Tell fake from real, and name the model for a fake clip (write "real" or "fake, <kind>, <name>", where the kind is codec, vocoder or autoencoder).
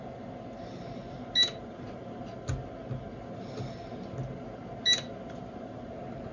real